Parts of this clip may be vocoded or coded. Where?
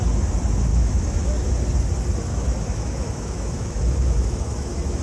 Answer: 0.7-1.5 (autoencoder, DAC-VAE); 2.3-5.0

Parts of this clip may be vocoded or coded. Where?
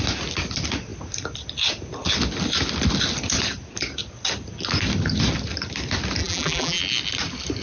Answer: 6.2-6.8 (vocoder, BigVGAN v2)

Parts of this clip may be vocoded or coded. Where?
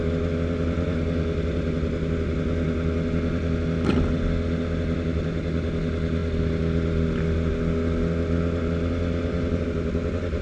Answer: none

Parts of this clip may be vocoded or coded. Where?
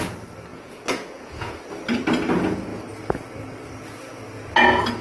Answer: 0.5-1.6 (vocoder, Vocos)